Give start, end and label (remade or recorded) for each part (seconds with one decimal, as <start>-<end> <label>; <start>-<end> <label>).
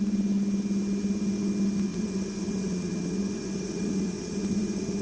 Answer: 0.0-1.9 recorded; 1.9-5.0 remade